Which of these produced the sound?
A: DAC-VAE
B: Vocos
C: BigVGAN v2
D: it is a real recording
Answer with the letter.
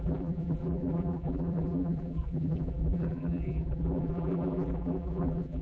C